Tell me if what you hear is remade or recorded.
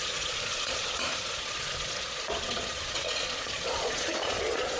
remade